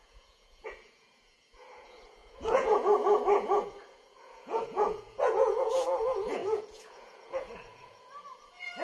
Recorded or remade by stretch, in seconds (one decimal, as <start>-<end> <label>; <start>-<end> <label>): 0.0-8.8 remade

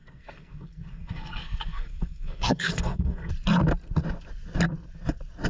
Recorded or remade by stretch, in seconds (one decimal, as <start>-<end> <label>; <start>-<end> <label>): 0.0-3.3 remade; 3.3-5.5 recorded

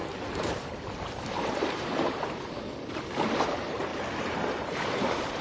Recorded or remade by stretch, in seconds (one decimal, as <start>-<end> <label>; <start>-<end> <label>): 0.0-3.9 remade; 3.9-4.5 recorded; 4.5-5.4 remade

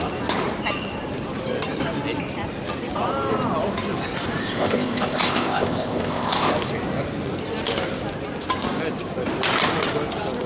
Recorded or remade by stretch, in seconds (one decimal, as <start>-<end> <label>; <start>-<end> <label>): 0.0-4.4 recorded; 4.4-6.5 remade; 6.5-10.5 recorded

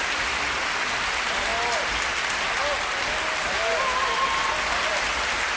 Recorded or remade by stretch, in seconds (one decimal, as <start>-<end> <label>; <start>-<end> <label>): 0.0-5.6 recorded

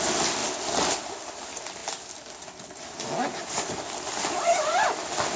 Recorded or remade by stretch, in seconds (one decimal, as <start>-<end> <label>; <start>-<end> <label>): 0.0-5.4 recorded

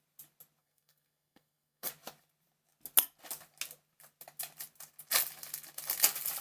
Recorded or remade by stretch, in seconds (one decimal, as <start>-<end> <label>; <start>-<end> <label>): 0.0-0.6 recorded; 0.6-1.9 remade; 1.9-6.4 recorded